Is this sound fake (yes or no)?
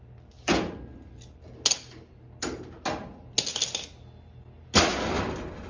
no